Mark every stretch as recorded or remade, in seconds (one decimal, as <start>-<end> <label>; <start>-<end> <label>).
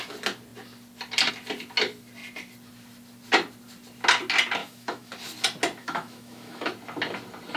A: 0.0-4.6 recorded; 4.6-5.1 remade; 5.1-5.8 recorded; 5.8-6.7 remade; 6.7-7.6 recorded